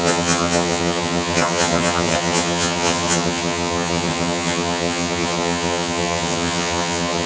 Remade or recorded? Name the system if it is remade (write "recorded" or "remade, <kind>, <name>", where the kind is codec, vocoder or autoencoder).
remade, vocoder, HiFi-GAN